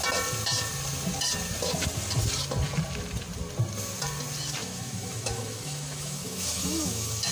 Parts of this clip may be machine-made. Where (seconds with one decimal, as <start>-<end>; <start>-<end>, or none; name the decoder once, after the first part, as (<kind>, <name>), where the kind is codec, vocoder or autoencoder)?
4.6-7.3 (autoencoder, DAC-VAE)